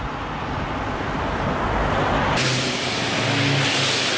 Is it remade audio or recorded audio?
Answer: recorded